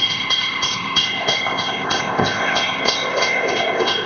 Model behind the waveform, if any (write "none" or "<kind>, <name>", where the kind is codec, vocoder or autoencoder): codec, ZipCodec